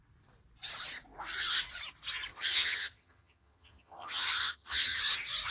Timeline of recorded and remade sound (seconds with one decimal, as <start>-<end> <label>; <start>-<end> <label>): 0.0-2.3 recorded; 2.3-5.0 remade; 5.0-5.5 recorded